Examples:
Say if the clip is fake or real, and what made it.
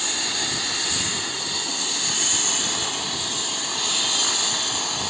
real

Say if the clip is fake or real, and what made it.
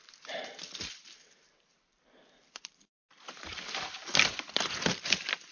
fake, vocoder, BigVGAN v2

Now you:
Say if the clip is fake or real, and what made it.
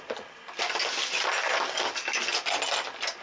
real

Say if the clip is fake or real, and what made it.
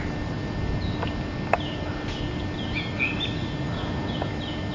real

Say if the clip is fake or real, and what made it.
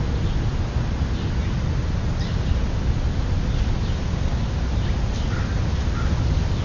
real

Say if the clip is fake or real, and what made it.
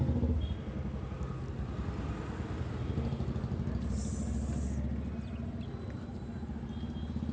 real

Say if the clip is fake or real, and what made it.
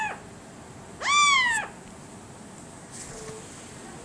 real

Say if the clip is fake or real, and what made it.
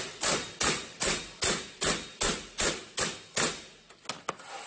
real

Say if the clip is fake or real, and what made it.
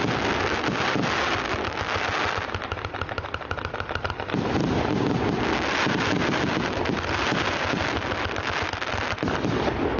real